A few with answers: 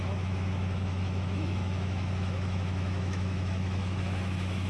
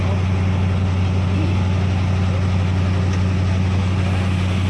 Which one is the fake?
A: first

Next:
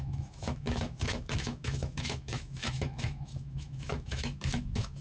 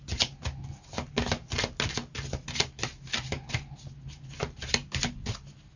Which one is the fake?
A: first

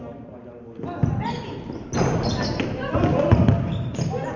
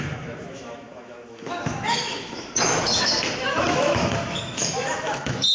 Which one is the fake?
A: second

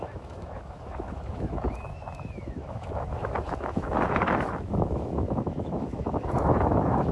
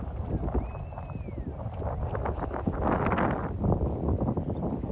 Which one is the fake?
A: first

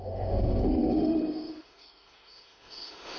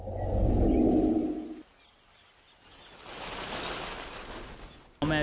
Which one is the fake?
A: first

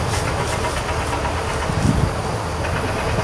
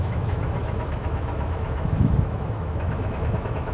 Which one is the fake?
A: second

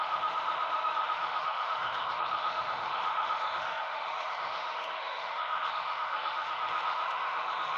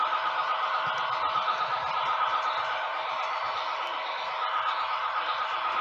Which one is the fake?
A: first